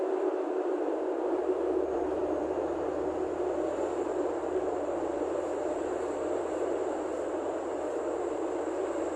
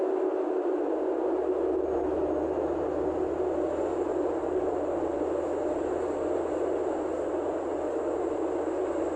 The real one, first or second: second